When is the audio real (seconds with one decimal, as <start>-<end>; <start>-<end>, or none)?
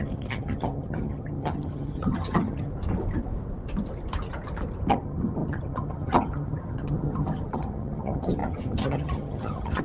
2.7-4.9